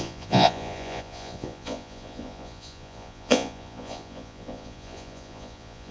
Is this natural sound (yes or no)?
no